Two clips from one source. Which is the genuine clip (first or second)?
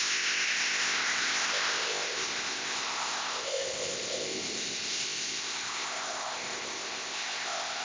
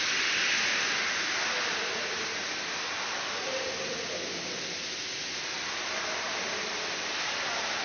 second